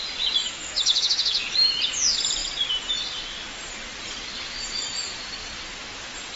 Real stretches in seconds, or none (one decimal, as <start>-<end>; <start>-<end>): 0.0-0.4; 1.5-6.4